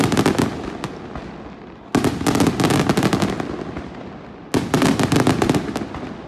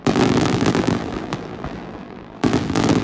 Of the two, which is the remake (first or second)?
second